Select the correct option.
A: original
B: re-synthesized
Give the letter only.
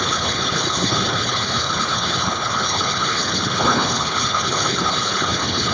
B